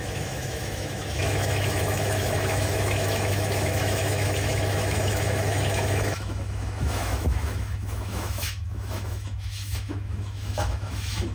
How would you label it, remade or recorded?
remade